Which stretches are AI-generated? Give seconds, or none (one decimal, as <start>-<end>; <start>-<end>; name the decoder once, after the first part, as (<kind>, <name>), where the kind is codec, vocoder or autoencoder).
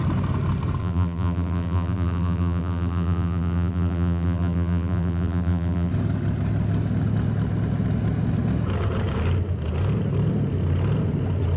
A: 0.8-5.9 (vocoder, BigVGAN v2)